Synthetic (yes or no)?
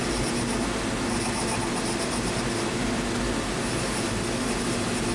no